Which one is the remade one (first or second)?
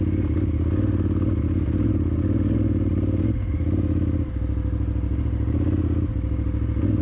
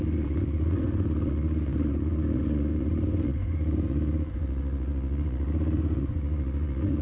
second